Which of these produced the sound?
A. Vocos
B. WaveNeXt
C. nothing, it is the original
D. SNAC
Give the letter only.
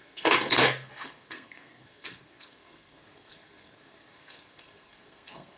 D